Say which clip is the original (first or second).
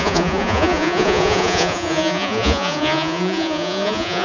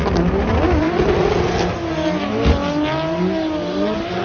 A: second